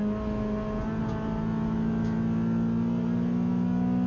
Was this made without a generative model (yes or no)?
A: yes